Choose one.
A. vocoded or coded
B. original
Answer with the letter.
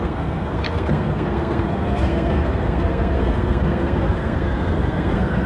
A